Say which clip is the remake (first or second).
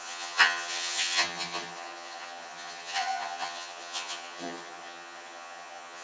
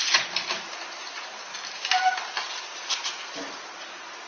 first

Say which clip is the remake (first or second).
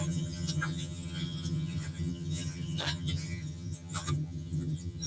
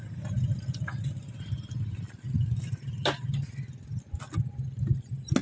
first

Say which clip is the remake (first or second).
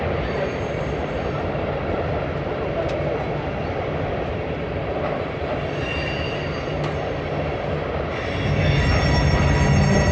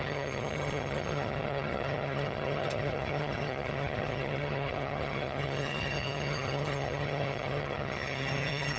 second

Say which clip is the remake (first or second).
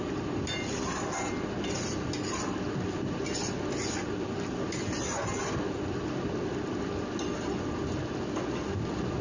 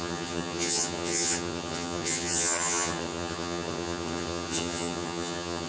second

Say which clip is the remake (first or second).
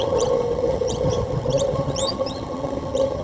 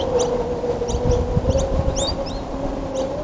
first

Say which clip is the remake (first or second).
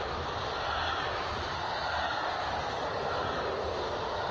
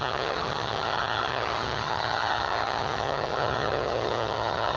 second